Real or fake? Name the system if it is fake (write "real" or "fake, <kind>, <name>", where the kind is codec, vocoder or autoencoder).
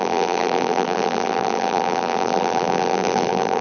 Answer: fake, vocoder, BigVGAN v2